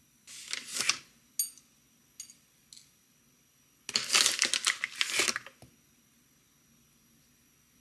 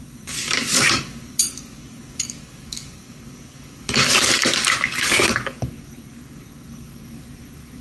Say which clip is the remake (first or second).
second